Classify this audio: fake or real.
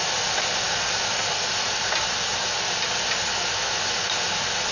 real